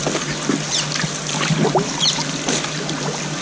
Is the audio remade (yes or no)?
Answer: no